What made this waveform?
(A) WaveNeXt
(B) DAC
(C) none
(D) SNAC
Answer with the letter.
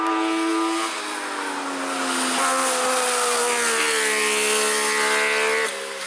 C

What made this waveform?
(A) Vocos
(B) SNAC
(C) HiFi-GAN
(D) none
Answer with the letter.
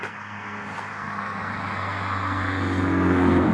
B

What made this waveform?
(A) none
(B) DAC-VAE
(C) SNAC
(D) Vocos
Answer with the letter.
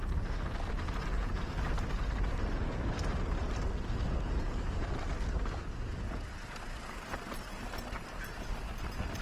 A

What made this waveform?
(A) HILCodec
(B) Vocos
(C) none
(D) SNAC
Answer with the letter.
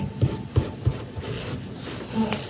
C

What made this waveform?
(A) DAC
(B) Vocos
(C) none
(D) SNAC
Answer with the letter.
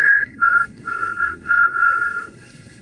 D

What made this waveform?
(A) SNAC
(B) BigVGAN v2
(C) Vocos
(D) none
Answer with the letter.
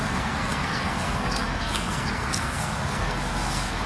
A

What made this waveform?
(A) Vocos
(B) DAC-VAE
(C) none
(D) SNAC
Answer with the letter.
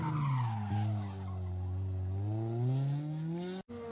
C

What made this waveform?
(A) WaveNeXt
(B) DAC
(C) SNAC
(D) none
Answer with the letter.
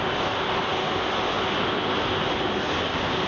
D